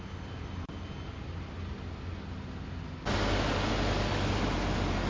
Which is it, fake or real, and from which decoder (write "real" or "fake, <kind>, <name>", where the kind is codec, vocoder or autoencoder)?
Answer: real